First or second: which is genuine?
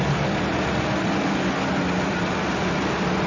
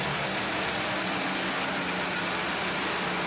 second